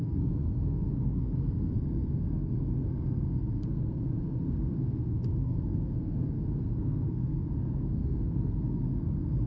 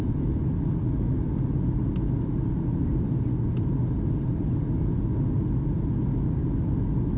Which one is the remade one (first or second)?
first